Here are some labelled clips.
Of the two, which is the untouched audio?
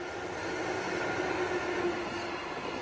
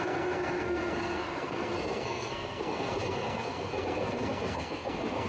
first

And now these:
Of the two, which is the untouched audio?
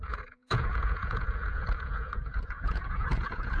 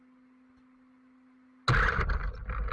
second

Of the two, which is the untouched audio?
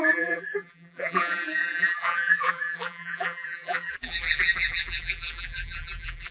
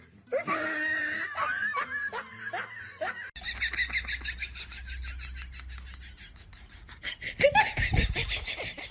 second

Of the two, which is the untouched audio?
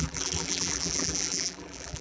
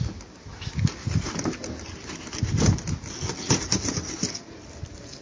second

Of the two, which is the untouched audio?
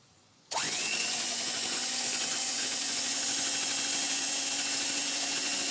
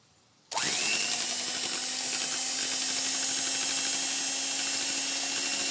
second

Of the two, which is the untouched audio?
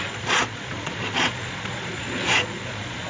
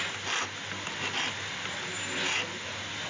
second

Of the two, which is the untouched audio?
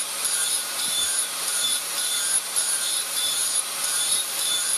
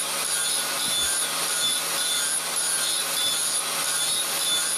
second